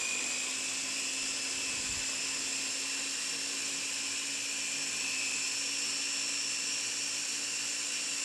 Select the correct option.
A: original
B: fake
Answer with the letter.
A